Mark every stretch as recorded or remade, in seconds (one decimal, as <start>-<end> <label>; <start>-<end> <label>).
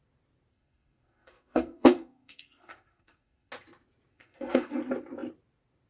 0.0-0.5 recorded; 0.5-3.5 remade; 3.5-4.1 recorded; 4.1-4.8 remade; 4.8-5.9 recorded